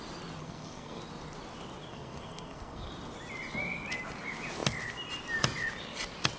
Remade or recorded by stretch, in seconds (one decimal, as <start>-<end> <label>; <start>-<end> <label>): 0.0-0.4 recorded; 0.4-1.0 remade; 1.0-1.9 recorded; 1.9-2.9 remade; 2.9-6.4 recorded